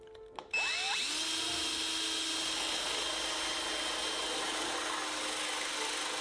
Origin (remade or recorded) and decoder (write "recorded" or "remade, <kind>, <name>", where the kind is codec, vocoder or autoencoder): recorded